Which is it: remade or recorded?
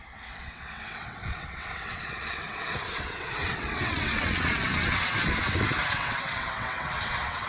remade